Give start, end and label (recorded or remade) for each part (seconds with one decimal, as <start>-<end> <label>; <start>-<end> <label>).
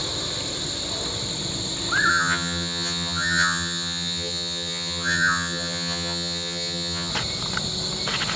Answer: 0.0-2.1 recorded; 2.1-7.1 remade; 7.1-8.4 recorded